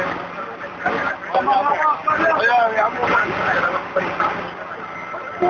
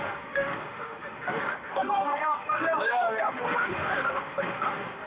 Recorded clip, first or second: first